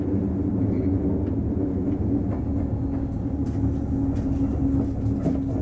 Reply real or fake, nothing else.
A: real